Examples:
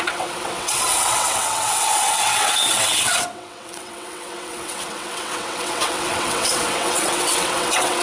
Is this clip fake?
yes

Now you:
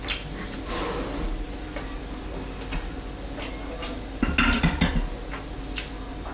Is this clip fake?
no